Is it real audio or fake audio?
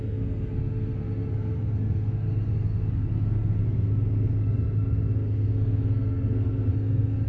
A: fake